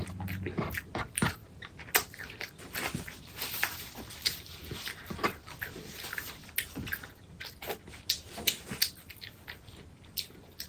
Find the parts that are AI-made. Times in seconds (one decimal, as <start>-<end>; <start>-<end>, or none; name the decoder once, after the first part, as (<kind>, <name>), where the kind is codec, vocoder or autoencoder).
1.4-4.1 (vocoder, BigVGAN v2)